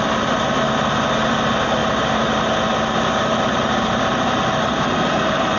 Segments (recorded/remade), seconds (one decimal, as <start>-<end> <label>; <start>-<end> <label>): 0.0-1.8 recorded; 1.8-5.6 remade

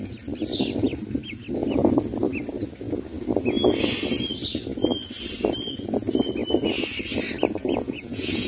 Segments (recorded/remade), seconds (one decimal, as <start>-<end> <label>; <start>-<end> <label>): 0.0-7.6 recorded; 7.6-8.5 remade

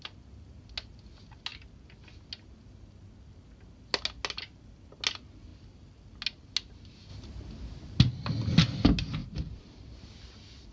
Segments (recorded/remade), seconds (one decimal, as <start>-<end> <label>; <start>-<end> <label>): 0.0-9.2 recorded; 9.2-9.9 remade; 9.9-10.7 recorded